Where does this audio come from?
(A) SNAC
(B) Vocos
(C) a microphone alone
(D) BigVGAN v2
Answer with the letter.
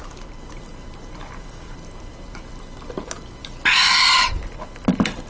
C